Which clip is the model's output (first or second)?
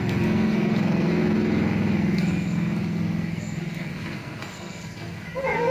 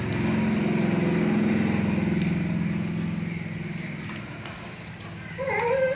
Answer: first